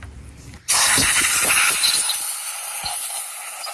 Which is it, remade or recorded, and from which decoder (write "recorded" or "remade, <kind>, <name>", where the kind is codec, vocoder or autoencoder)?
recorded